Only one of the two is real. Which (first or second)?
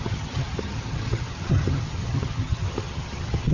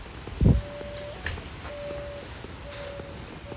second